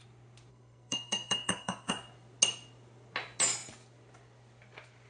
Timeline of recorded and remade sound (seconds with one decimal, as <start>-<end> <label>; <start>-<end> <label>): 0.0-0.5 recorded; 0.5-1.9 remade; 1.9-5.1 recorded